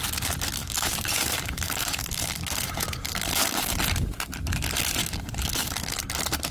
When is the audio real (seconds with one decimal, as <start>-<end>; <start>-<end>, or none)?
0.0-0.6; 3.7-5.0; 6.0-6.5